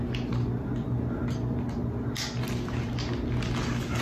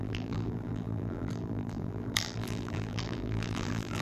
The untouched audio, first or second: first